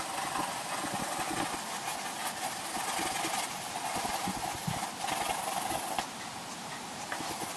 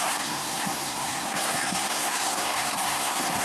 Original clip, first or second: first